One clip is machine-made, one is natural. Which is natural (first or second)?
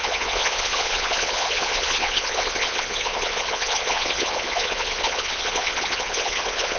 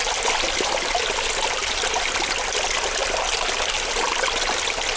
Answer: second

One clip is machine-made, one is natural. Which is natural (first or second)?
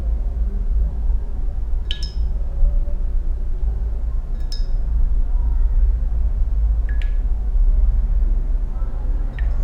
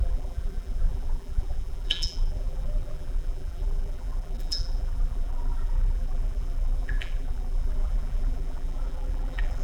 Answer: first